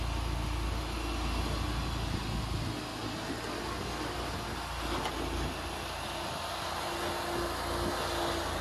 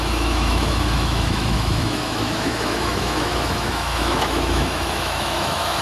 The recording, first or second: first